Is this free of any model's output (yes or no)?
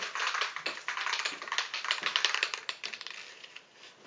yes